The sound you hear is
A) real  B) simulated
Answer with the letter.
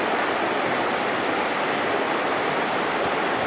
A